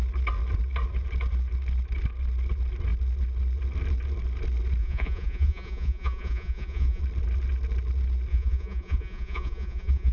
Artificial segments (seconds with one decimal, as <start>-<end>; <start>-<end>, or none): 4.8-7.0; 8.3-10.1